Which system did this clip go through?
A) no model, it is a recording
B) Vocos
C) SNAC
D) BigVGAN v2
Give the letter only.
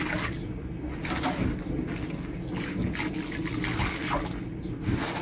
A